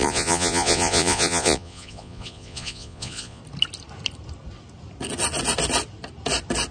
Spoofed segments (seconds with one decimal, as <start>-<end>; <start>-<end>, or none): 0.0-3.4